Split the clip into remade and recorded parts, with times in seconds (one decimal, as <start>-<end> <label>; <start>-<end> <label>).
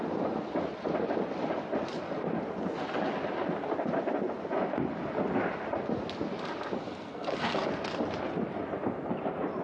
0.0-6.8 recorded; 6.8-7.7 remade; 7.7-9.6 recorded